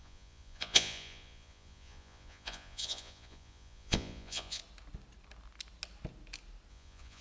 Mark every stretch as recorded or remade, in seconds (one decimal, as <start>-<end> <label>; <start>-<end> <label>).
0.0-4.6 remade; 4.6-6.7 recorded; 6.7-7.2 remade